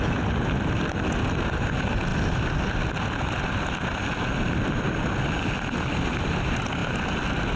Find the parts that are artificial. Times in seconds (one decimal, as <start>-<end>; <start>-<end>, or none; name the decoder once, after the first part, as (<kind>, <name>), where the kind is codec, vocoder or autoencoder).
none